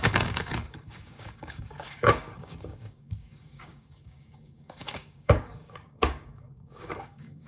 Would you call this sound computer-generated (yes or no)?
yes